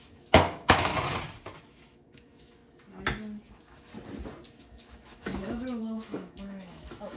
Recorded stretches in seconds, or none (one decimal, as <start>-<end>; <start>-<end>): 0.9-1.7; 2.6-3.5; 3.9-4.5